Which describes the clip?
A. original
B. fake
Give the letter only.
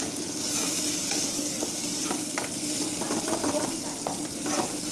A